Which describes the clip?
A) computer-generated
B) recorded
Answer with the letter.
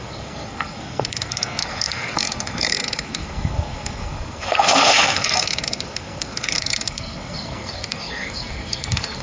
A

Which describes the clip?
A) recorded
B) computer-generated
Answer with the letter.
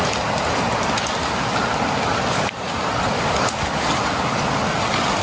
A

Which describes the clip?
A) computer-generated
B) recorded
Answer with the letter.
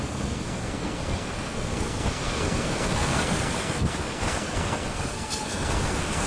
A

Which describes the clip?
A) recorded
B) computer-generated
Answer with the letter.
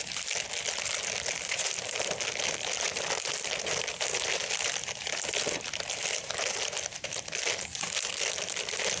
A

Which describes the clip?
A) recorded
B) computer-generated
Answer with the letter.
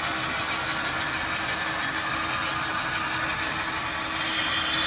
A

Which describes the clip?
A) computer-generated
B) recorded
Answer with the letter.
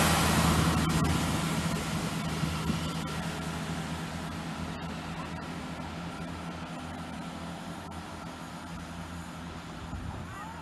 B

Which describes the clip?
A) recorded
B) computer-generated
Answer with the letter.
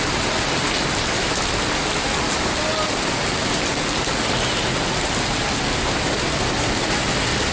A